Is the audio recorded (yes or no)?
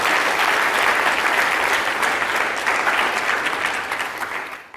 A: yes